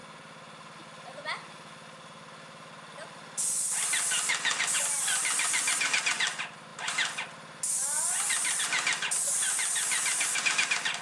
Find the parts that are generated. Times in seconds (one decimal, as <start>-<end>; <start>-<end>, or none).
none

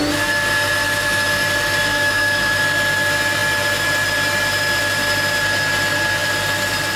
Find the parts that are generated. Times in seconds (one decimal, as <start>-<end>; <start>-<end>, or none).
1.9-2.6

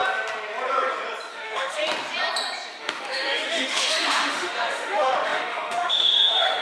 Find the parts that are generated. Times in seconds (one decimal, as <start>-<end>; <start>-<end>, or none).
1.3-1.8; 2.8-6.6

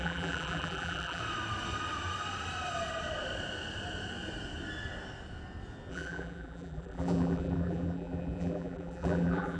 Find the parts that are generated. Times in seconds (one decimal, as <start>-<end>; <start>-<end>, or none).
0.0-1.2; 5.9-9.6

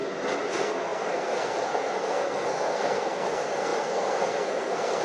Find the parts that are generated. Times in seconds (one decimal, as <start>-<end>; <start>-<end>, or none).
0.5-5.0

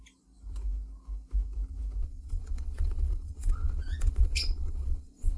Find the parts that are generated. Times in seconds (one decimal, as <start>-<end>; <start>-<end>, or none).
2.0-5.4

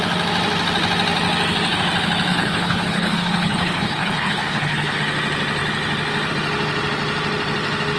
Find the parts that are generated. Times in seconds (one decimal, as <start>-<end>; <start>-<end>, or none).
2.3-5.0

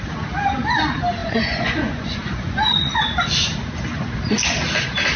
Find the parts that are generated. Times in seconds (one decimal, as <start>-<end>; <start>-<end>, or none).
1.2-2.9